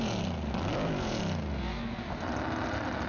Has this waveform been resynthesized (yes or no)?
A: no